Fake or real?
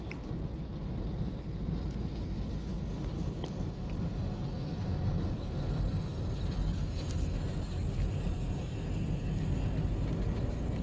real